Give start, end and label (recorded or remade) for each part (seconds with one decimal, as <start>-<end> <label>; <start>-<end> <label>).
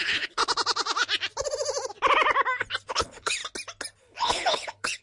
0.0-0.4 remade; 0.4-2.9 recorded; 2.9-3.4 remade; 3.4-4.0 recorded; 4.0-5.0 remade